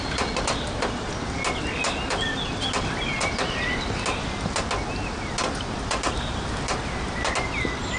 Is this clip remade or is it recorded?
recorded